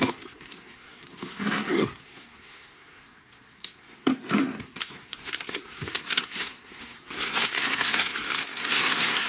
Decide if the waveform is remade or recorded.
remade